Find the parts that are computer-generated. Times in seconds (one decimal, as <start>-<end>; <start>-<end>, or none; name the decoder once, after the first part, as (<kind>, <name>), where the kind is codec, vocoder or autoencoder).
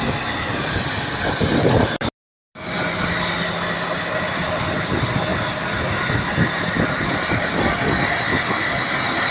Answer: none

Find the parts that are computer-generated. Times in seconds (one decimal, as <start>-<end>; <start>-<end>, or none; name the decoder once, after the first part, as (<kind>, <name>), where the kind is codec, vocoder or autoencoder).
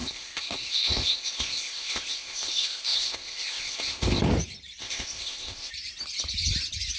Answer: 0.0-4.2 (codec, ZipCodec); 4.8-5.7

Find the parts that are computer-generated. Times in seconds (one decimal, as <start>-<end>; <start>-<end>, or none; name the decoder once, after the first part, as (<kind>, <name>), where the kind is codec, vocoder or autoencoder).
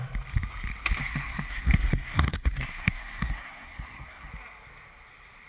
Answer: 1.0-4.3 (codec, SNAC)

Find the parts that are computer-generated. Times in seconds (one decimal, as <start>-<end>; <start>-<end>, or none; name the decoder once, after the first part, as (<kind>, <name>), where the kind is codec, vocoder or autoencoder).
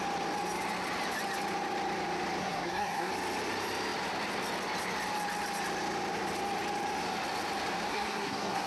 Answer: 2.4-3.1 (codec, SNAC); 7.9-8.7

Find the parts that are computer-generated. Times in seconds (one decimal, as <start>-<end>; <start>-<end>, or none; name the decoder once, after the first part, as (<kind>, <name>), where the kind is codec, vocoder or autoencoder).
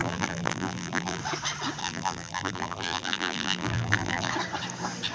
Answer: 0.0-1.2 (vocoder, BigVGAN v2); 1.8-4.3